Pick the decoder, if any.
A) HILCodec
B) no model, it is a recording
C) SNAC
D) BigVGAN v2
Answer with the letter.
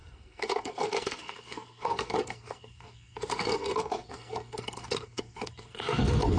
C